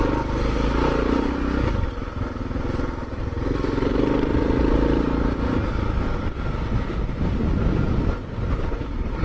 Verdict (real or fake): real